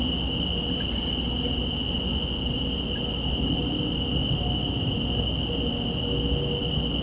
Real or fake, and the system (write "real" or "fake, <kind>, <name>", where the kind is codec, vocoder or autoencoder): real